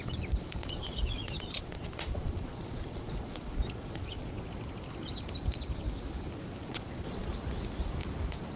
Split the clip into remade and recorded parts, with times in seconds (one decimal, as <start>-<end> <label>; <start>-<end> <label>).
0.0-0.6 recorded; 0.6-4.5 remade; 4.5-6.7 recorded; 6.7-7.3 remade; 7.3-8.6 recorded